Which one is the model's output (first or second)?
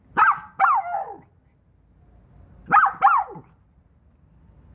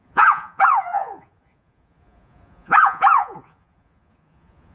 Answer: second